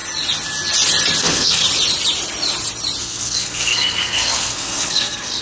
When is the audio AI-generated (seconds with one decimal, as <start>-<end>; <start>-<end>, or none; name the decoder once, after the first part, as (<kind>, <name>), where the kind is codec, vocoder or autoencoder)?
1.2-1.6 (codec, SNAC); 3.0-5.4

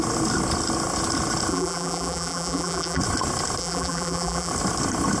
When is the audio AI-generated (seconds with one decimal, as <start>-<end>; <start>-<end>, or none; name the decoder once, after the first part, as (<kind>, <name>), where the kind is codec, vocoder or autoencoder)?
1.5-3.0 (vocoder, BigVGAN v2); 3.6-4.5

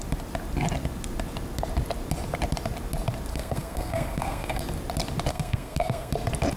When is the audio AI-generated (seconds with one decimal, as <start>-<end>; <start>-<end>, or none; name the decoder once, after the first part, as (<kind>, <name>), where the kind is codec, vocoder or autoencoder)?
3.3-4.6 (codec, SNAC); 5.3-6.1

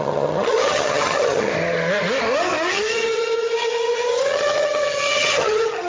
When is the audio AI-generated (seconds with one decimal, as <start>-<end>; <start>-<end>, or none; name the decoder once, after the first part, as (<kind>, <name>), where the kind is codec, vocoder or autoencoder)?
0.0-1.5 (vocoder, HiFi-GAN); 2.7-5.9